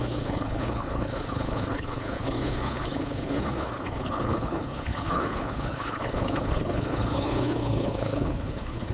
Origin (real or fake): fake